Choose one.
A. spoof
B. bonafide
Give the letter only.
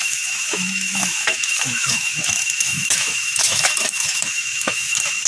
A